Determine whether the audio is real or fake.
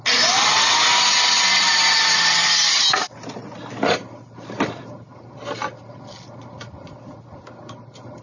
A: real